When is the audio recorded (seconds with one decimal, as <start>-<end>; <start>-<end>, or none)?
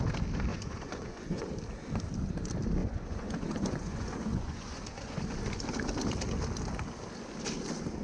0.0-0.5; 1.5-2.8; 5.2-8.0